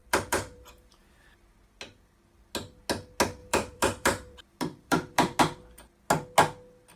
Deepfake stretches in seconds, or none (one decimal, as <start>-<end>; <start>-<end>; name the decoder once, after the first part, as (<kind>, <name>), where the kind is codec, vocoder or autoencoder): 0.0-0.9 (vocoder, BigVGAN v2); 3.4-5.4